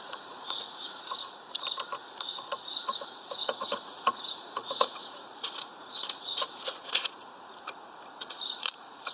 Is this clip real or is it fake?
fake